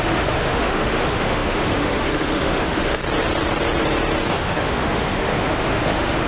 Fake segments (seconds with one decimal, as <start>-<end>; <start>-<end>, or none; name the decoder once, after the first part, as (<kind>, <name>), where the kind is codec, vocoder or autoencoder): 0.0-3.0 (autoencoder, DAC-VAE); 4.3-6.3